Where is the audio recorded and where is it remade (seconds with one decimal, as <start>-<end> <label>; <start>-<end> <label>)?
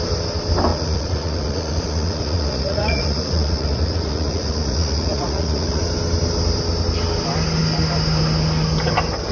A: 0.0-0.7 recorded; 0.7-5.8 remade; 5.8-9.3 recorded